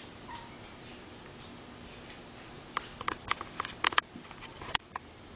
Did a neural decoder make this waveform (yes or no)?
no